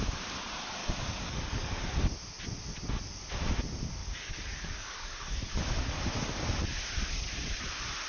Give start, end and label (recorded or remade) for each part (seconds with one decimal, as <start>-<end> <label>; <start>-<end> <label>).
0.0-0.8 recorded; 0.8-1.8 remade; 1.8-4.0 recorded; 4.0-5.5 remade; 5.5-8.1 recorded